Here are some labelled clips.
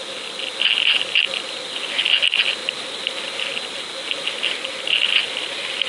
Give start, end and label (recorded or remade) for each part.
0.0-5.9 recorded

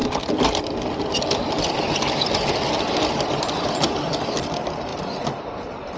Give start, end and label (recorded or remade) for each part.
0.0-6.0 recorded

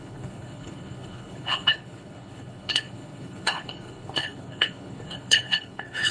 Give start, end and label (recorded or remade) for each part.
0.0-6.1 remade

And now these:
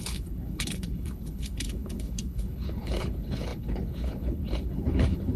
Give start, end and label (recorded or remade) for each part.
0.0-5.4 remade

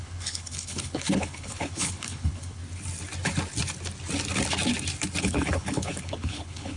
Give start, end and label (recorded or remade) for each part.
0.0-2.6 remade; 2.6-5.2 recorded; 5.2-6.8 remade

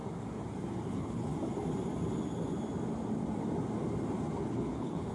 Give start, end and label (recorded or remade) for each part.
0.0-0.9 recorded; 0.9-1.3 remade; 1.3-4.4 recorded; 4.4-5.1 remade